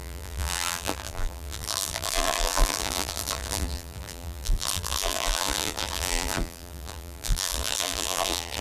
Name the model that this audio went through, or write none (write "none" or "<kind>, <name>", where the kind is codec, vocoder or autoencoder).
vocoder, BigVGAN v2